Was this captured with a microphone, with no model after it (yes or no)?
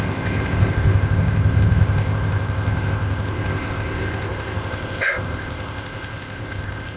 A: no